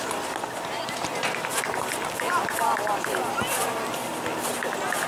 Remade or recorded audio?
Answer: recorded